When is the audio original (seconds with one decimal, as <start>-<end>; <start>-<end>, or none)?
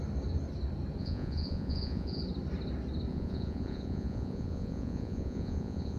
0.0-1.0; 2.2-3.1